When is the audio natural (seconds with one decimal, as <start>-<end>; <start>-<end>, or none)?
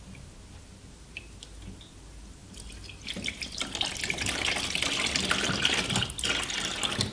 0.0-7.1